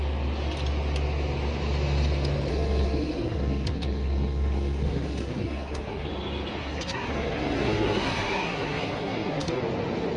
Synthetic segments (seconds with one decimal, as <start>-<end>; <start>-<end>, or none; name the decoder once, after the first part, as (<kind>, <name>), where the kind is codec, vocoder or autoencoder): 2.5-6.1 (codec, SNAC); 6.6-9.6